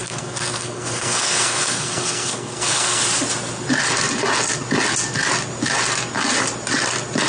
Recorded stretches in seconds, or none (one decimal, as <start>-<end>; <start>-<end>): 3.0-7.3